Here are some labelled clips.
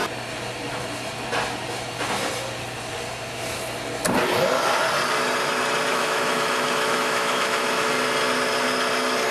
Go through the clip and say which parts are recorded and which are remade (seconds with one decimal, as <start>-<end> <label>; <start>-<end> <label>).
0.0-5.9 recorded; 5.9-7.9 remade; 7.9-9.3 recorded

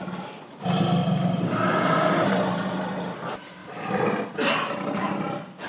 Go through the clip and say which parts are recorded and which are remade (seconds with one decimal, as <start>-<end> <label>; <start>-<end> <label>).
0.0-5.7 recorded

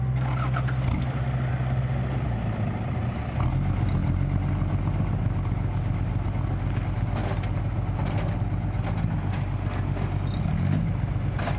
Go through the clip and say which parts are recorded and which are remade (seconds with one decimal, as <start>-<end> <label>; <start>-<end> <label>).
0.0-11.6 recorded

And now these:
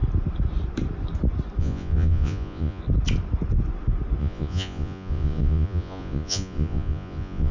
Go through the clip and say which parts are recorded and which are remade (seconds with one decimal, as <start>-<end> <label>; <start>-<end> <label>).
0.0-1.6 recorded; 1.6-2.8 remade; 2.8-4.2 recorded; 4.2-7.5 remade

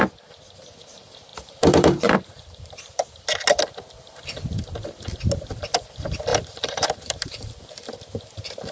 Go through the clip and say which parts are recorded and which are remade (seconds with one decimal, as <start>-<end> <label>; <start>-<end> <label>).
0.0-1.3 recorded; 1.3-3.2 remade; 3.2-6.3 recorded; 6.3-7.5 remade; 7.5-8.7 recorded

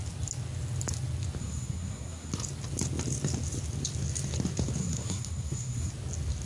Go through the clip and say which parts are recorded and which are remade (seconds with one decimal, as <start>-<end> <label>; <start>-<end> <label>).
0.0-1.4 recorded; 1.4-2.3 remade; 2.3-4.8 recorded; 4.8-5.9 remade; 5.9-6.5 recorded